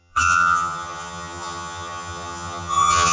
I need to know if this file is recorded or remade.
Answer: remade